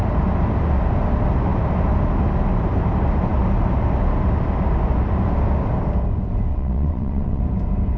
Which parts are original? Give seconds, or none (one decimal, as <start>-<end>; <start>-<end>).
0.0-6.5; 7.4-8.0